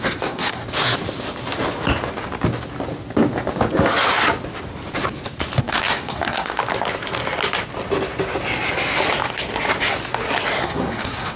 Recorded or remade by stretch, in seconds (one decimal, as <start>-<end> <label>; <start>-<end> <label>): 0.0-0.6 remade; 0.6-5.6 recorded; 5.6-6.6 remade; 6.6-10.6 recorded; 10.6-11.4 remade